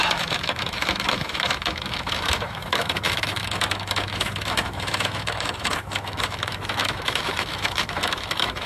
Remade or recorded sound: remade